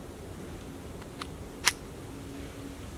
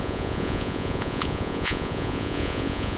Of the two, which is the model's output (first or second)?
second